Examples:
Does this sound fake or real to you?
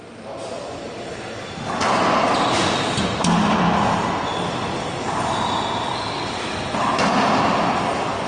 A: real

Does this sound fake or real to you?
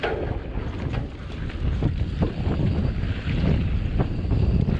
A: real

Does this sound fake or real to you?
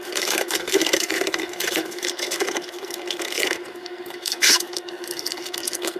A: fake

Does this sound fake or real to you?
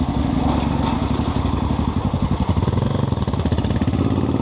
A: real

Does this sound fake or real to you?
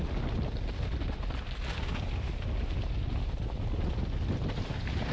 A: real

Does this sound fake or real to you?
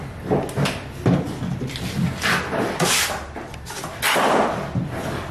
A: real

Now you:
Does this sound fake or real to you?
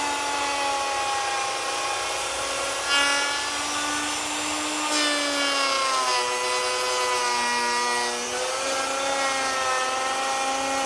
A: real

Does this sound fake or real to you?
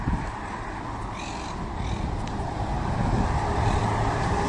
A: real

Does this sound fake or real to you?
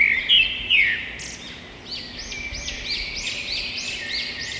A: real